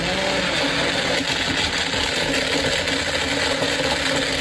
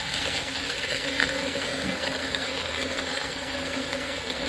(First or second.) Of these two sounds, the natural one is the first